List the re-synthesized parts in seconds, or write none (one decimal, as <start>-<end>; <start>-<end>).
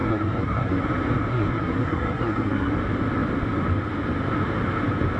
0.0-0.8; 1.3-2.7